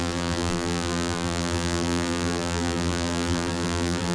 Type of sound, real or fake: fake